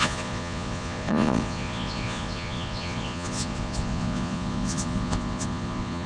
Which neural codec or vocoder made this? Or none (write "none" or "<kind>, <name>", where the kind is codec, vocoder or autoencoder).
vocoder, Vocos